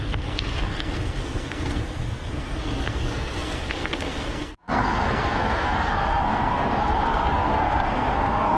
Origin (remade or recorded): remade